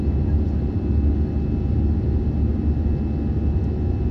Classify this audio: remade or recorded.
recorded